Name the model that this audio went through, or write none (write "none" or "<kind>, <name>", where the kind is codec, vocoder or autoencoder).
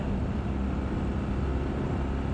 none